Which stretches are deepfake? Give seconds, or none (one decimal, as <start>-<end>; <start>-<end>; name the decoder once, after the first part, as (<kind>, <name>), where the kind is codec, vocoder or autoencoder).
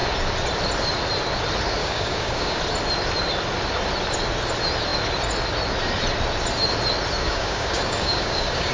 1.8-2.6 (codec, DAC); 7.2-8.7